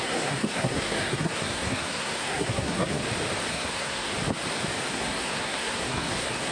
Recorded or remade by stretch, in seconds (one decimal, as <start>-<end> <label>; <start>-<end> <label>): 0.0-3.0 remade; 3.0-3.5 recorded; 3.5-4.1 remade; 4.1-4.9 recorded; 4.9-6.5 remade